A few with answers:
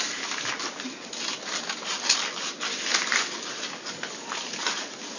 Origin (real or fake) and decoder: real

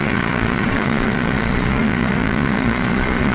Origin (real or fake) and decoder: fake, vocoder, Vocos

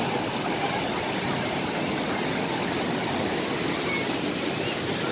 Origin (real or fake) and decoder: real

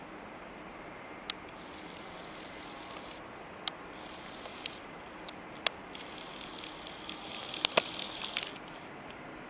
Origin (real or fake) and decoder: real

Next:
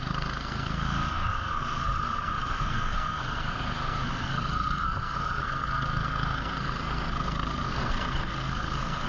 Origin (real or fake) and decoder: fake, codec, SNAC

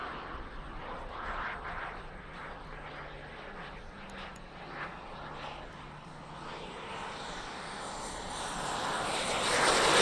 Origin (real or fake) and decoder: real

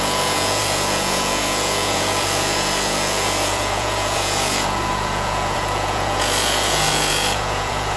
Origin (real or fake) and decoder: fake, vocoder, Vocos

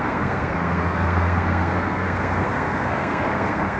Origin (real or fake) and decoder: fake, codec, SNAC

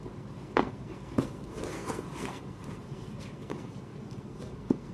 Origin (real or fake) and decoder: fake, codec, SNAC